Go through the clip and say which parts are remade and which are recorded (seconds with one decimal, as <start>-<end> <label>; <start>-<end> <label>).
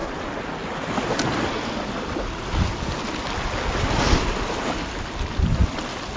0.0-6.2 recorded